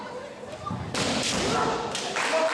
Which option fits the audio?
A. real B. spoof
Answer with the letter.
A